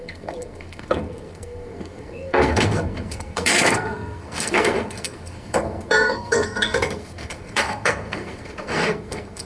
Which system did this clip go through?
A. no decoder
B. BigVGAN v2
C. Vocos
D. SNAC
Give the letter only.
D